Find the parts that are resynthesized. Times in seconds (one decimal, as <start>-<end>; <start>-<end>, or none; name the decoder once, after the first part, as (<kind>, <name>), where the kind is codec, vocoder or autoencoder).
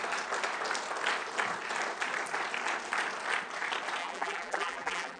4.0-5.2 (vocoder, BigVGAN v2)